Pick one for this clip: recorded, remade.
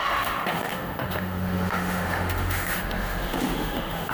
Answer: remade